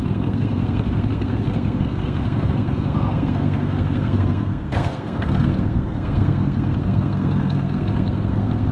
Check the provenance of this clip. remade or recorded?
remade